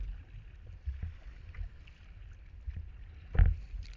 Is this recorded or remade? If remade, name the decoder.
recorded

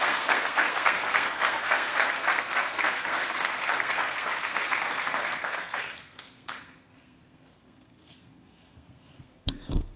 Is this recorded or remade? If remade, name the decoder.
remade, codec, SNAC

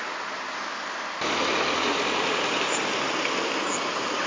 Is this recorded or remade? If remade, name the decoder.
recorded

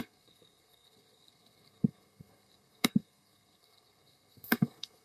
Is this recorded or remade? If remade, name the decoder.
remade, codec, SNAC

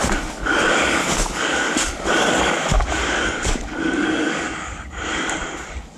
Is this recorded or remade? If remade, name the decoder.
remade, codec, DAC